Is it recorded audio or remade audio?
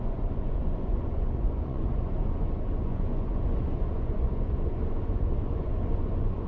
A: remade